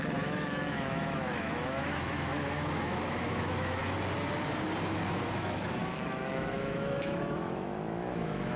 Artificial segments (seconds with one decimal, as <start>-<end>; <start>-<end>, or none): 0.0-3.8; 5.1-8.6